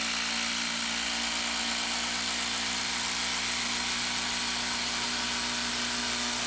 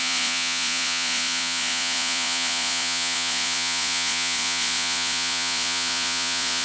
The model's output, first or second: second